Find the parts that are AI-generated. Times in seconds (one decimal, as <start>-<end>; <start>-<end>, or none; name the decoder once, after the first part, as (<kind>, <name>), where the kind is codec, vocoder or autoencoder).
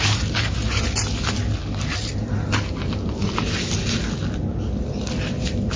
none